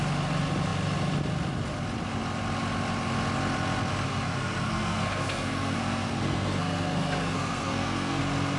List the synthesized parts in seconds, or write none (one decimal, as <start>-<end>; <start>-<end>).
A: 4.1-8.2